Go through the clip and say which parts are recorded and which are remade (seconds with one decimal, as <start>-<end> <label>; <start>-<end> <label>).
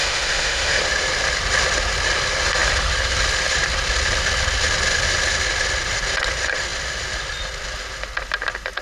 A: 0.0-0.8 remade; 0.8-8.8 recorded